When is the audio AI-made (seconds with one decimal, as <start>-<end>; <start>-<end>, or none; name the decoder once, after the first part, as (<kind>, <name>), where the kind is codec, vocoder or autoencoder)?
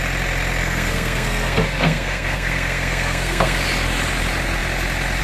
0.6-3.6 (codec, SNAC)